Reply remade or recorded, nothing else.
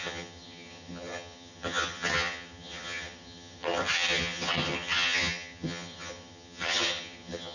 remade